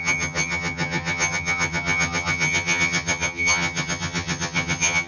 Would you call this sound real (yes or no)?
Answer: no